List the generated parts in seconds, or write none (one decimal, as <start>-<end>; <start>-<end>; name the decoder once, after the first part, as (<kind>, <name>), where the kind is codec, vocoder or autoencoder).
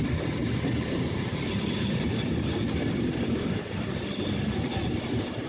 0.4-3.7 (vocoder, BigVGAN v2)